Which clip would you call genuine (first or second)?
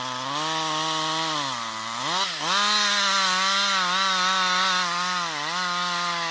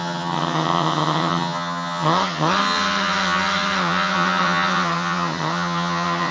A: first